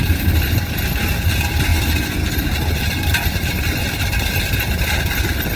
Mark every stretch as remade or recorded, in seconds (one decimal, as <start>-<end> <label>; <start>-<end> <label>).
0.0-5.6 remade